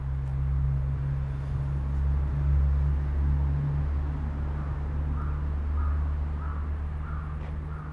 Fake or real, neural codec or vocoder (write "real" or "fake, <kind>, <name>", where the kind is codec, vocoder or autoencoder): real